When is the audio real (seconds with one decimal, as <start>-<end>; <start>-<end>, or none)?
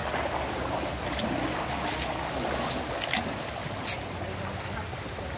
0.0-5.4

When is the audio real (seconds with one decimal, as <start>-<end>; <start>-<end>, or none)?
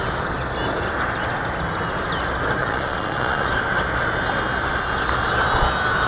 0.0-2.6; 3.5-6.1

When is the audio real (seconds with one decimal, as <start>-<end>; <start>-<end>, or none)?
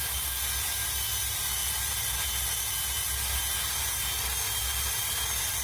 0.0-5.6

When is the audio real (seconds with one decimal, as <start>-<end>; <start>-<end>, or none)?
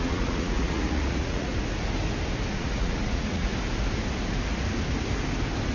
1.5-2.5; 3.5-5.7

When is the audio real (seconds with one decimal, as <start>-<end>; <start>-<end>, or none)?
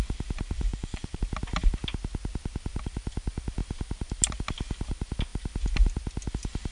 0.0-0.7; 1.2-6.7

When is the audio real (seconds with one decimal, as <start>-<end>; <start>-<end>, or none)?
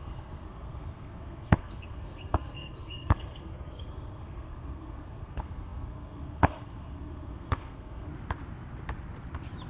8.1-9.7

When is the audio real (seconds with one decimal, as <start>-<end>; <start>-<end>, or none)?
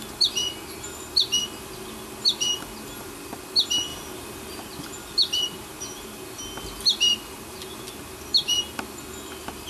0.0-9.7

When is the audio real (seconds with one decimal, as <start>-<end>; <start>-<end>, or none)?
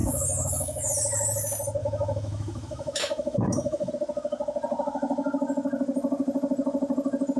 0.9-1.8; 3.9-7.4